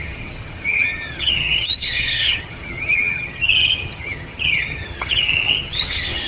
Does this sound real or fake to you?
fake